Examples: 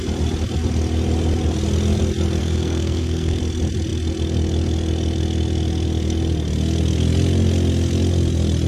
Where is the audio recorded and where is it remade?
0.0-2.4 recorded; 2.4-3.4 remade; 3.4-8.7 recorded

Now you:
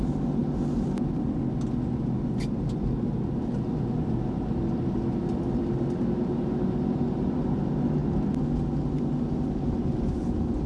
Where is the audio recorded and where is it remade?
0.0-10.7 recorded